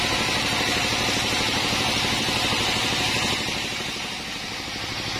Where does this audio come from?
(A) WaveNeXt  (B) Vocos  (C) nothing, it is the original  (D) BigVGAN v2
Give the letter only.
C